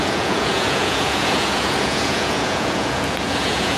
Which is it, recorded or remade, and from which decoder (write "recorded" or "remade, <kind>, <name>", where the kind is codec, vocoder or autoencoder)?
remade, vocoder, Vocos